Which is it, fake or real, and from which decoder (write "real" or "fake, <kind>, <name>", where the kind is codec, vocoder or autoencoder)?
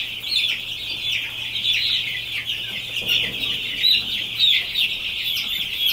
real